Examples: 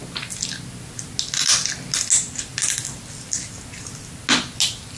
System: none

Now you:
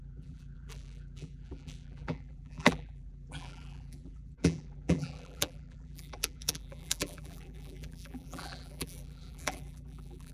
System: vocoder, BigVGAN v2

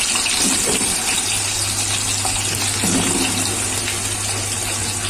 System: none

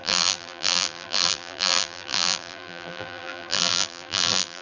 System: vocoder, BigVGAN v2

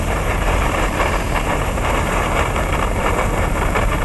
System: vocoder, BigVGAN v2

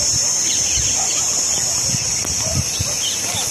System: none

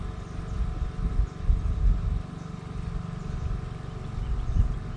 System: none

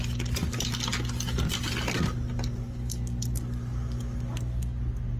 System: none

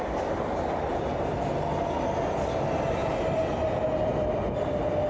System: none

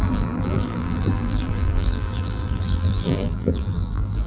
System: vocoder, BigVGAN v2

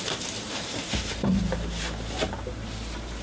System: vocoder, BigVGAN v2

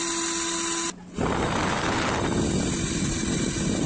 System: none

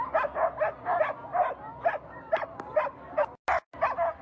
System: none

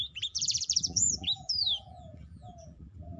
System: vocoder, BigVGAN v2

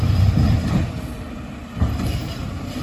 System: vocoder, BigVGAN v2